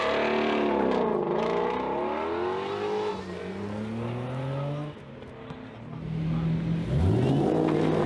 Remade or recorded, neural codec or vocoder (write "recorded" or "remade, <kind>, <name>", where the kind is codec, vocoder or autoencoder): recorded